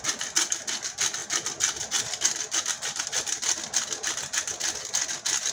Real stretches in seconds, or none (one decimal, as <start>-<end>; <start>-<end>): 0.0-5.5